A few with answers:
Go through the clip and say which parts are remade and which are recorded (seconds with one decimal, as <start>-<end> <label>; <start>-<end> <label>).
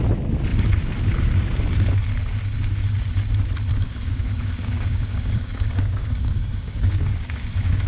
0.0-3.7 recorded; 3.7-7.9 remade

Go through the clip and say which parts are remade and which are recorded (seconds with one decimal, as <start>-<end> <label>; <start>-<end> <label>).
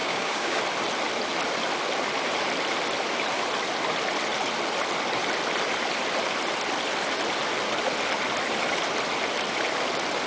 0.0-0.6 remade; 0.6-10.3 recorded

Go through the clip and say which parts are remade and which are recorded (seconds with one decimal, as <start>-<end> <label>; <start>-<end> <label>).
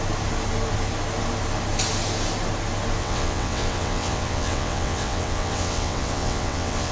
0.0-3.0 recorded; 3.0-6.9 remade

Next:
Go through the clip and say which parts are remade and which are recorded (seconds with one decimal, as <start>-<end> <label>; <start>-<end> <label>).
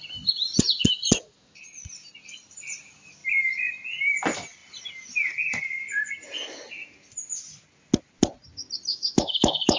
0.0-8.9 recorded; 8.9-9.8 remade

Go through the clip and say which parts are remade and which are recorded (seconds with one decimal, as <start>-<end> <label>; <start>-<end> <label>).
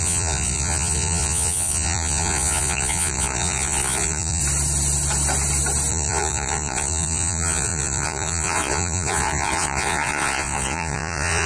0.0-4.4 remade; 4.4-5.9 recorded; 5.9-11.5 remade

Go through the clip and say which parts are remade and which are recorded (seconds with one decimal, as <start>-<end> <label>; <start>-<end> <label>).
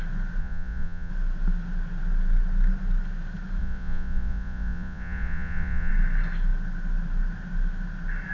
0.0-0.4 recorded; 0.4-1.1 remade; 1.1-3.6 recorded; 3.6-5.9 remade; 5.9-8.3 recorded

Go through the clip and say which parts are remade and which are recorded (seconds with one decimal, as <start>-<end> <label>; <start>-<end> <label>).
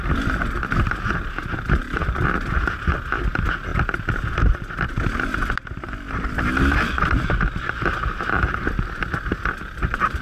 0.0-1.5 recorded; 1.5-2.2 remade; 2.2-10.2 recorded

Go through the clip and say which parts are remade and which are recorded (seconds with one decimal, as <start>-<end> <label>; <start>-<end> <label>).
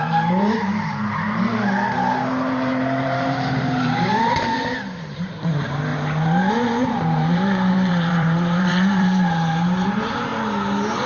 0.0-10.3 remade; 10.3-11.1 recorded